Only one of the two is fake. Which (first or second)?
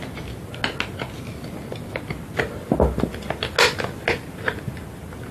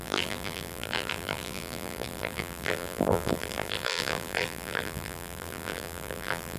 second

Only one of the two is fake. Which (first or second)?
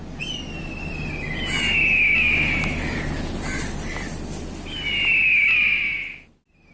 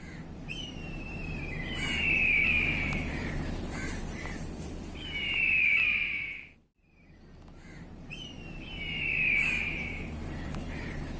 second